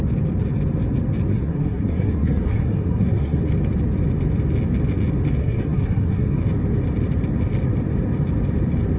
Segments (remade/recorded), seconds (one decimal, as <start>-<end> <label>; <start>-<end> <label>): 0.0-1.3 recorded; 1.3-3.4 remade; 3.4-5.4 recorded; 5.4-6.4 remade; 6.4-9.0 recorded